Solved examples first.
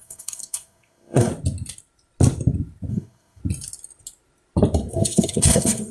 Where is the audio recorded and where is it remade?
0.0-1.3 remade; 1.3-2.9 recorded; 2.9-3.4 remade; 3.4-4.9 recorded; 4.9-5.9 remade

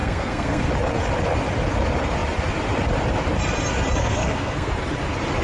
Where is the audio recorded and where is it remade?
0.0-0.7 remade; 0.7-4.0 recorded; 4.0-4.7 remade; 4.7-5.4 recorded

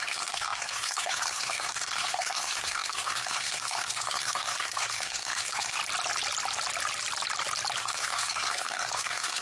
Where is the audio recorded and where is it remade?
0.0-5.8 remade; 5.8-7.8 recorded; 7.8-9.4 remade

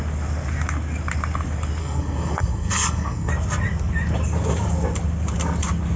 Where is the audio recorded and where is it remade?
0.0-1.8 recorded; 1.8-3.3 remade; 3.3-6.0 recorded

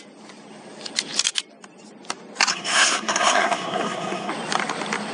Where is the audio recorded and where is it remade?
0.0-2.5 recorded; 2.5-4.3 remade; 4.3-5.1 recorded